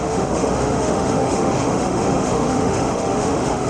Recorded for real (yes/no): no